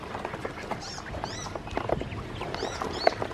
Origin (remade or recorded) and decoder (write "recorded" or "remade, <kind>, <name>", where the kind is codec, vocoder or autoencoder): remade, vocoder, BigVGAN v2